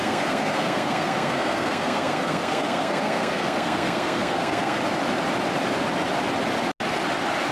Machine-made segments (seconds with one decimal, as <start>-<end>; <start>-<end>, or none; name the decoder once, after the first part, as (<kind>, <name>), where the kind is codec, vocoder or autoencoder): 0.0-4.8 (codec, SNAC)